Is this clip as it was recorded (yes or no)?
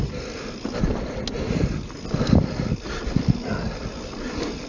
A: yes